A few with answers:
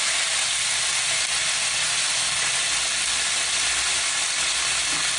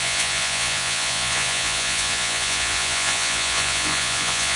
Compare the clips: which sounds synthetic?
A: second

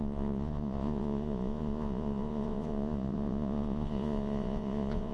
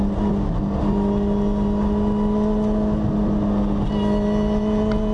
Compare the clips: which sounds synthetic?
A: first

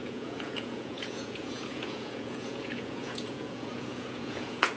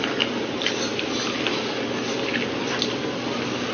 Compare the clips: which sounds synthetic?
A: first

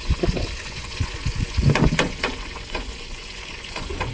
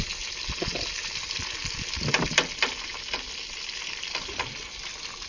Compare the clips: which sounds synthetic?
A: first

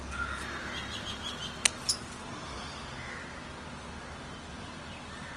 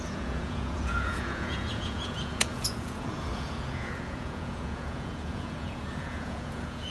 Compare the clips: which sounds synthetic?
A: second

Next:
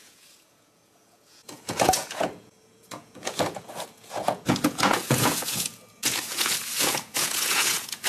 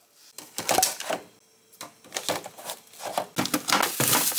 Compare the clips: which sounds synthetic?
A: first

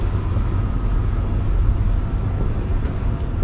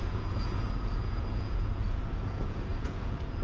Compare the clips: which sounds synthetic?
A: second